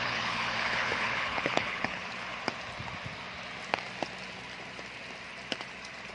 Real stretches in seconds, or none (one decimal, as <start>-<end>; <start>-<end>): 2.0-6.1